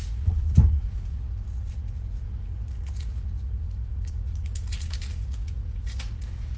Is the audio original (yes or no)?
no